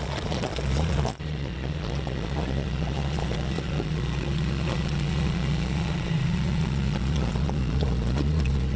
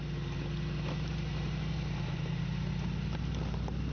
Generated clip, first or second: first